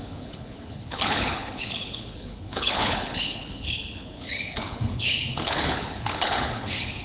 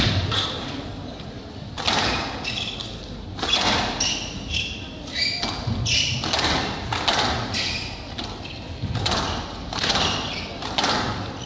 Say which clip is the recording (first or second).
second